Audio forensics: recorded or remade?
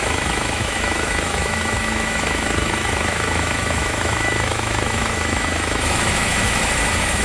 remade